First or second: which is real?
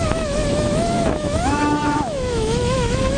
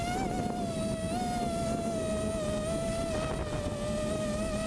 second